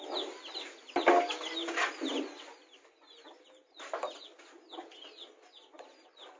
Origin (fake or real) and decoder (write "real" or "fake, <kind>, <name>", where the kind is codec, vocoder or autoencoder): real